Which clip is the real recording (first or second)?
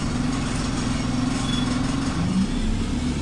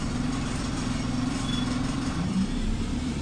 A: first